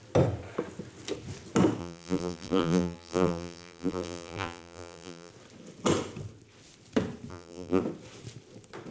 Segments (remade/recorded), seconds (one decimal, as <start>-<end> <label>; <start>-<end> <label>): 0.0-1.8 recorded; 1.8-5.3 remade; 5.3-7.3 recorded; 7.3-7.8 remade; 7.8-8.9 recorded